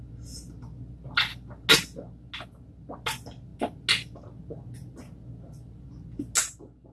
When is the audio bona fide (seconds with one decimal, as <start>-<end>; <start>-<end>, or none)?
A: 0.0-6.9